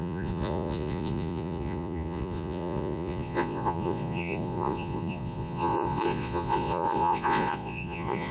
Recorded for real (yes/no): no